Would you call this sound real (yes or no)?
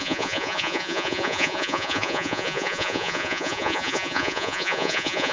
no